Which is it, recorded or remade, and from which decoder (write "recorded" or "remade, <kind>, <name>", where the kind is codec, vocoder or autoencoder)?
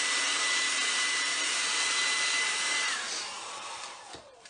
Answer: remade, vocoder, BigVGAN v2